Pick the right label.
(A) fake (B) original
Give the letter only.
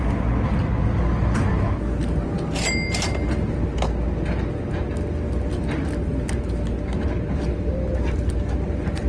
B